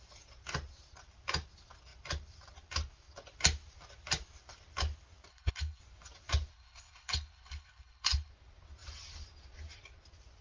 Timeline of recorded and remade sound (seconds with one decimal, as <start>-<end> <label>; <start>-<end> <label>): 0.0-5.3 recorded; 5.3-5.8 remade; 5.8-6.5 recorded; 6.5-8.3 remade; 8.3-10.4 recorded